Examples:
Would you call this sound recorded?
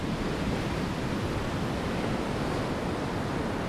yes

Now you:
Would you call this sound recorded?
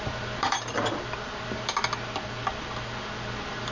no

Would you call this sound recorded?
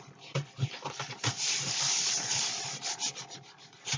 no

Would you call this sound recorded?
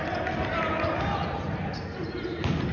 yes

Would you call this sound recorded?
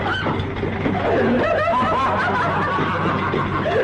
yes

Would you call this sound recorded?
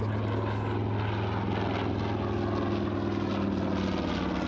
yes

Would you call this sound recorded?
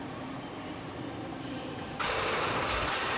no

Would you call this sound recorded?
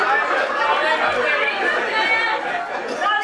yes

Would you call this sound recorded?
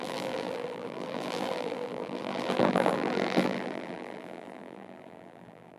no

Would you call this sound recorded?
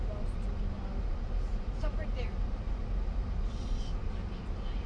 yes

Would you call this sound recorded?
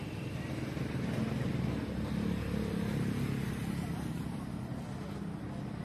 yes